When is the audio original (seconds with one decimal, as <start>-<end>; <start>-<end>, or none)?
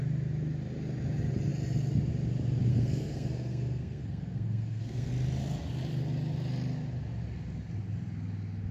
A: 0.0-2.7; 5.1-8.7